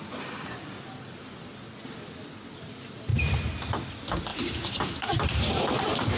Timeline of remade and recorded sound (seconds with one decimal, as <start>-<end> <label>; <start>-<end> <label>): 0.0-4.3 recorded; 4.3-6.2 remade